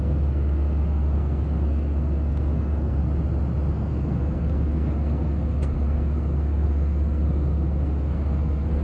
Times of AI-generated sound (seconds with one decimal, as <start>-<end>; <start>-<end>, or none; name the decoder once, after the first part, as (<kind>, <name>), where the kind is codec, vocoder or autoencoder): 0.0-3.0 (codec, SNAC); 3.7-8.8